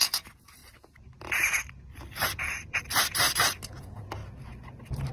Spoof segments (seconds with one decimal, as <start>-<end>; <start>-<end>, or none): 0.0-0.6; 3.7-4.2